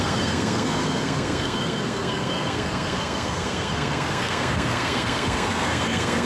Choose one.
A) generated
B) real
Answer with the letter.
A